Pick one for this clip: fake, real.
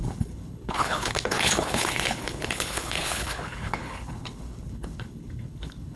fake